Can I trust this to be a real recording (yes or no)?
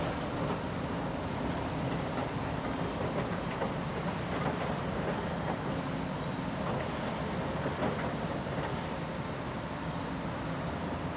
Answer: yes